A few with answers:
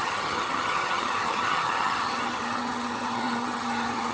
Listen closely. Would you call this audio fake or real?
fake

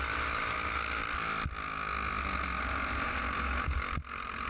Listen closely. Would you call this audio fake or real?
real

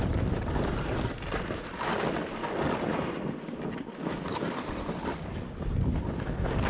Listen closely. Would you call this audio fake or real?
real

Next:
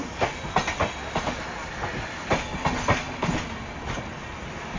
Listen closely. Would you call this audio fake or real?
real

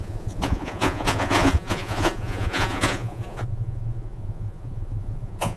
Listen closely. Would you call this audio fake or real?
fake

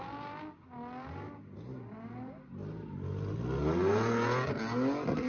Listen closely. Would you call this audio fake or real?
real